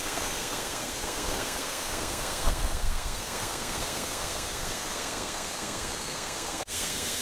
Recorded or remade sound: remade